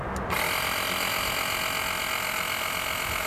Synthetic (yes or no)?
no